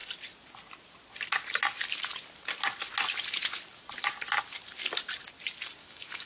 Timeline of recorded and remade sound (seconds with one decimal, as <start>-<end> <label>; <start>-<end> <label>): 0.0-5.8 recorded; 5.8-6.3 remade